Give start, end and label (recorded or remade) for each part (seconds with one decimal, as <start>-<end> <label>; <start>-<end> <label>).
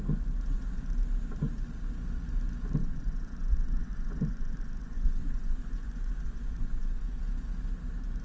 0.0-2.8 recorded; 2.8-7.2 remade; 7.2-8.2 recorded